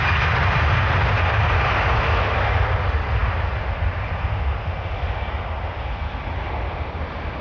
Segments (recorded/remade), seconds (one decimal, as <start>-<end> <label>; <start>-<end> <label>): 0.0-7.4 recorded